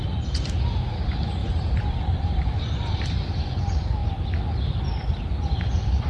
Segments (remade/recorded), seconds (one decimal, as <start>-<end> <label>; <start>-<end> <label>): 0.0-1.4 recorded; 1.4-2.6 remade; 2.6-6.1 recorded